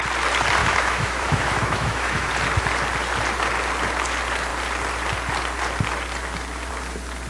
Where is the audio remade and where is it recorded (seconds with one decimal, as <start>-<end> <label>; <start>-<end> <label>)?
0.0-0.6 recorded; 0.6-2.3 remade; 2.3-7.3 recorded